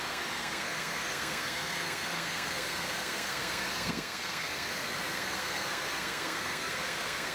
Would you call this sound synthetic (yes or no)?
yes